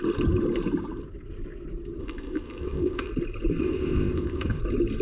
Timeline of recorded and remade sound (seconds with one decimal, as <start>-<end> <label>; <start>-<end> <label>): 0.0-2.0 recorded; 2.0-3.1 remade; 3.1-3.6 recorded; 3.6-4.6 remade; 4.6-5.0 recorded

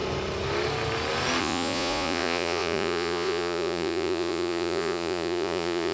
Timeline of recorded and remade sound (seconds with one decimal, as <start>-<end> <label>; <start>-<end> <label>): 0.0-1.4 recorded; 1.4-5.9 remade

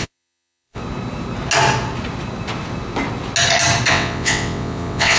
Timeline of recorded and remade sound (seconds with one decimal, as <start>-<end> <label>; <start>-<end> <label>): 0.0-0.8 remade; 0.8-3.9 recorded; 3.9-5.2 remade